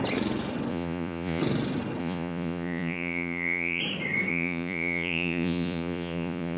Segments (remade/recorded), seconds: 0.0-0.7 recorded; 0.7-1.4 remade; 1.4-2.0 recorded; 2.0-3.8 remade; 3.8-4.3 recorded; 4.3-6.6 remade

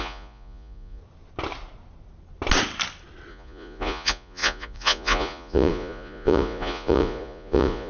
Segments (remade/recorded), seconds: 0.0-1.0 remade; 1.0-3.3 recorded; 3.3-7.9 remade

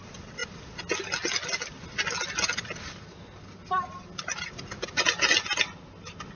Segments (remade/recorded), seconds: 0.0-6.4 recorded